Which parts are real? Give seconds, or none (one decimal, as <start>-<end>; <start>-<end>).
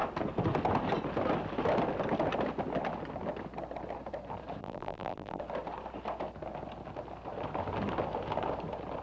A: 0.0-4.6; 5.4-9.0